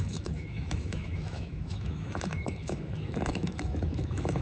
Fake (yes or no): yes